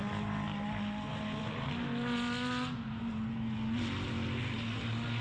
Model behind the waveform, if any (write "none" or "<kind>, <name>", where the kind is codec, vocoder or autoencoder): none